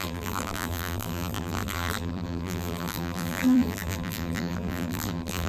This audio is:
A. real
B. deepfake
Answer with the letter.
B